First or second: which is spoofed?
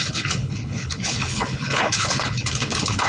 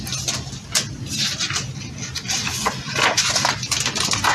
first